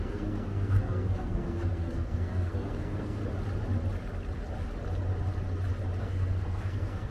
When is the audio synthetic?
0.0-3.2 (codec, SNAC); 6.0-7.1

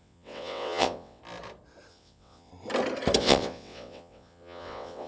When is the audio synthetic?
0.0-1.2 (vocoder, WaveNeXt); 1.9-2.5; 3.2-5.1

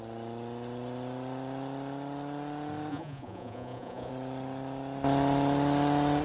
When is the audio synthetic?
2.9-4.1 (vocoder, Vocos)

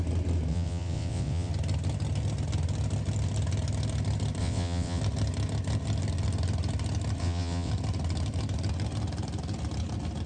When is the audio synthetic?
0.5-1.5 (vocoder, WaveNeXt); 4.4-5.0; 7.2-7.7

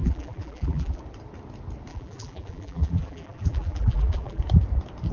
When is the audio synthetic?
0.0-1.0 (vocoder, BigVGAN v2); 1.9-4.4

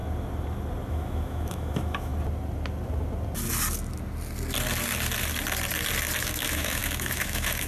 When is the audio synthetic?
0.9-2.1 (autoencoder, DAC-VAE); 6.2-7.7